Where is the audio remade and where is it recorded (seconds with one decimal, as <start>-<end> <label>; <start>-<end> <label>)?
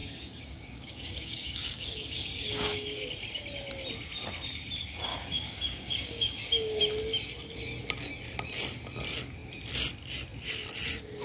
0.0-3.1 remade; 3.1-5.1 recorded; 5.1-6.8 remade; 6.8-11.2 recorded